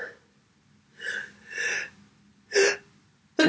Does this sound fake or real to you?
real